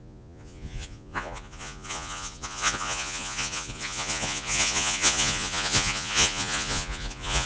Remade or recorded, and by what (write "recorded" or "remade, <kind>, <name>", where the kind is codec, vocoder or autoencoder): remade, vocoder, Vocos